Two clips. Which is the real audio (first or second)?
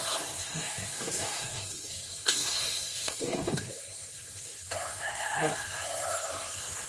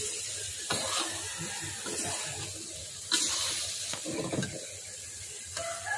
second